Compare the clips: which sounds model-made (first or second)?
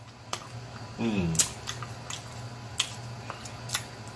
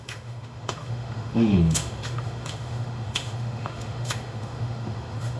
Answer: second